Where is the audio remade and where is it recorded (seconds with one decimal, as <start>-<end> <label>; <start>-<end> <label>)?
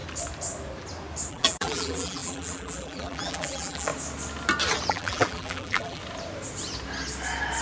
0.0-1.3 recorded; 1.3-3.9 remade; 3.9-4.9 recorded; 4.9-6.0 remade; 6.0-7.6 recorded